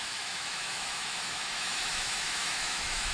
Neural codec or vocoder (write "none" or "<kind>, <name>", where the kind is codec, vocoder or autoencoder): autoencoder, DAC-VAE